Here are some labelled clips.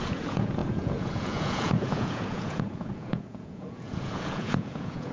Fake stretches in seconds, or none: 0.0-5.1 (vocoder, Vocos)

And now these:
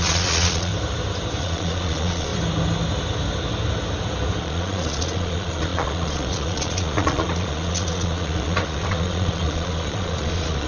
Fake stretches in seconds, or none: 0.0-0.7 (vocoder, Vocos); 1.4-2.3; 4.4-10.7

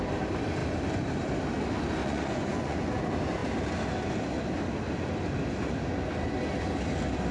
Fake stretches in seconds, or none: 2.0-2.9 (vocoder, Vocos)

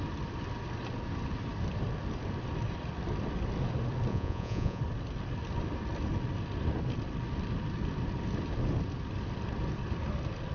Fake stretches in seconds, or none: 4.1-4.8 (vocoder, Vocos)

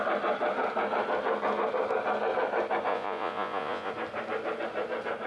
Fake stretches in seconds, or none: 2.9-3.9 (vocoder, Vocos)